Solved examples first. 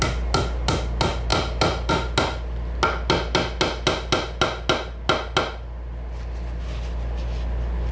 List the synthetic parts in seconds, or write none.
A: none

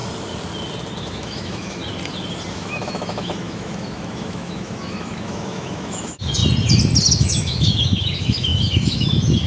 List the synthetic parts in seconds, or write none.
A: 1.0-1.8; 2.5-6.4; 7.1-9.5

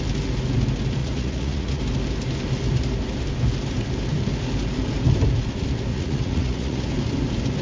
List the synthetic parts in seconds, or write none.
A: 1.0-1.8; 5.9-6.9

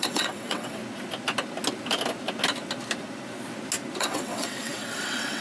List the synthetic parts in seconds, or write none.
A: 0.0-0.8; 4.0-5.4

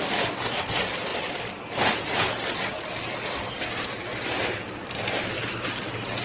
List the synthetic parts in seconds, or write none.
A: 1.1-3.5; 4.1-5.4

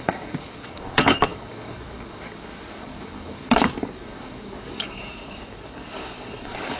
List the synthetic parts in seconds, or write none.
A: 0.0-6.8

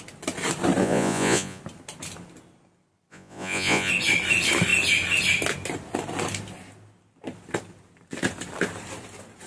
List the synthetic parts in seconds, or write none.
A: 0.8-1.6; 3.1-3.9

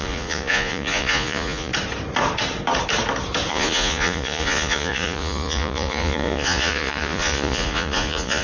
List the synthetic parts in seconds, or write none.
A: 0.0-1.7; 3.5-8.4